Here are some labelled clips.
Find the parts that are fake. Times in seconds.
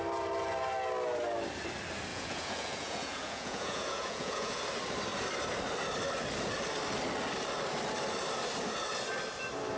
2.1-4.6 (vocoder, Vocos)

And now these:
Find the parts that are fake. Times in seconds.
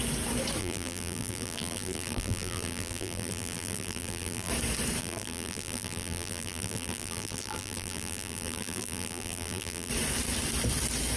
0.6-4.5 (vocoder, BigVGAN v2); 5.0-9.9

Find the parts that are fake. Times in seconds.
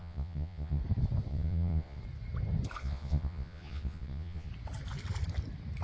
0.0-0.8 (vocoder, Vocos); 1.3-2.0; 2.8-4.5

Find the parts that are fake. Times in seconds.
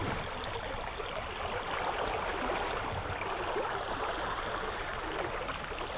none